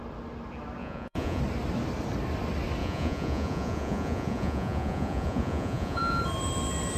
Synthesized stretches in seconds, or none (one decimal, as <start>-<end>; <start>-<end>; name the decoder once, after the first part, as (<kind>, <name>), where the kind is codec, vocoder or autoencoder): 0.8-1.4 (vocoder, Vocos); 2.8-6.2